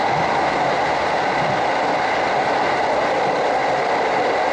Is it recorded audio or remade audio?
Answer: recorded